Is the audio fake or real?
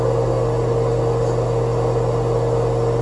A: real